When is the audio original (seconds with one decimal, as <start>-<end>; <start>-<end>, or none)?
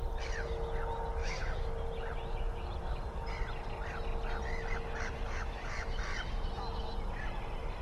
0.0-1.2; 1.7-7.8